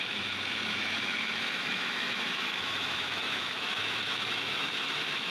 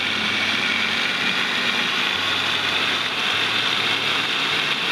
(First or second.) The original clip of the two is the second